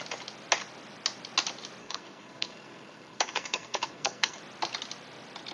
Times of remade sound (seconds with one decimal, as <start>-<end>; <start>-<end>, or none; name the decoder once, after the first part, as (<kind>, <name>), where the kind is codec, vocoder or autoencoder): 1.8-4.4 (codec, SNAC)